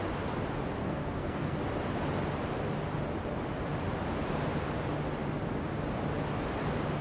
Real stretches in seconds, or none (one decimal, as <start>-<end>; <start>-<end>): 0.0-0.8; 1.6-7.0